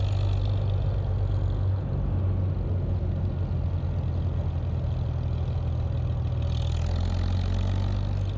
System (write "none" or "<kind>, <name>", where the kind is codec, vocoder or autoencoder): none